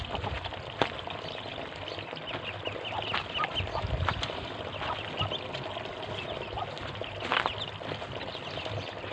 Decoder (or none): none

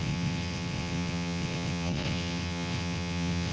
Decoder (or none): vocoder, WaveNeXt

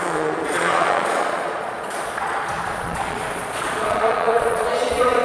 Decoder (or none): vocoder, Vocos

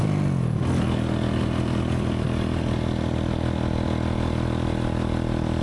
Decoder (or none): none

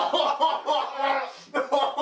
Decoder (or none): none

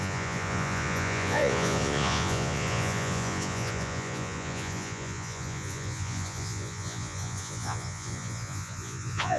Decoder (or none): vocoder, Vocos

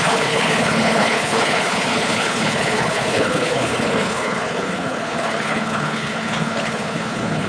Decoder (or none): codec, HILCodec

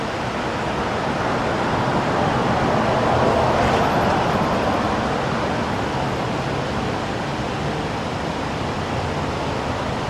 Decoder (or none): none